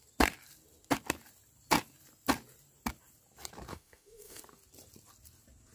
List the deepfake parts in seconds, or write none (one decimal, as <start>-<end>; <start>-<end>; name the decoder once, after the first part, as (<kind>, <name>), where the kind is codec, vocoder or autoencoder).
3.7-4.4 (autoencoder, DAC-VAE)